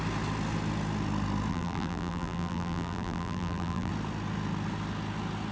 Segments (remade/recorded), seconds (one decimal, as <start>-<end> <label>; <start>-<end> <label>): 0.0-1.5 recorded; 1.5-3.9 remade; 3.9-5.5 recorded